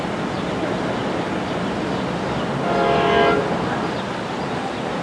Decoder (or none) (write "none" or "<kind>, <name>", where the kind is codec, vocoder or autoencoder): none